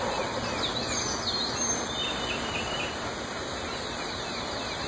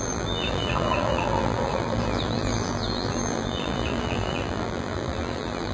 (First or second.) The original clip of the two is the first